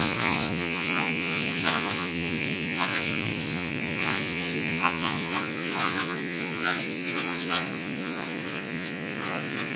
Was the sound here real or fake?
fake